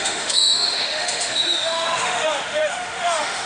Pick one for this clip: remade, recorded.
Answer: remade